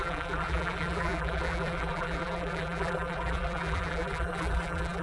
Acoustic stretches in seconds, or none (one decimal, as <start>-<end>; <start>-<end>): none